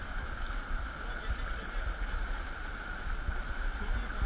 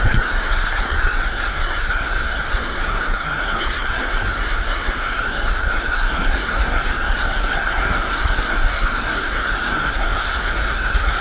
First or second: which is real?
first